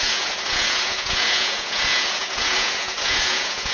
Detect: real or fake fake